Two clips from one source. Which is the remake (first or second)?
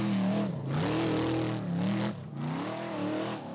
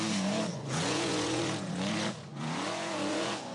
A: second